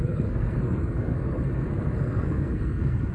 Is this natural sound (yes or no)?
no